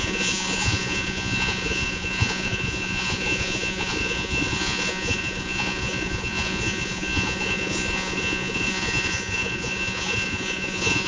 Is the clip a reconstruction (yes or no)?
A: yes